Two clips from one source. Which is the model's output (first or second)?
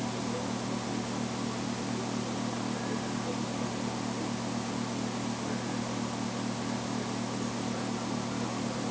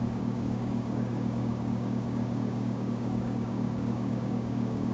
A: second